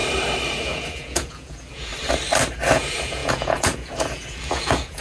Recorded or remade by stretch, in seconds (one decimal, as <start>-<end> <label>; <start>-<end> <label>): 0.0-0.6 recorded; 0.6-1.9 remade; 1.9-2.7 recorded; 2.7-5.0 remade